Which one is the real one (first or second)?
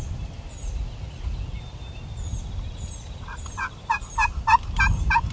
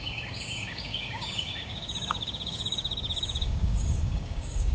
first